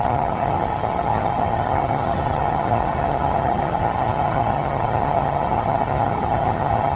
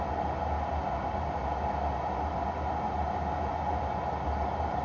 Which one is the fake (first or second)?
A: first